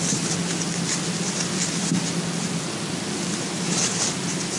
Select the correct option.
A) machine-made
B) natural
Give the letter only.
B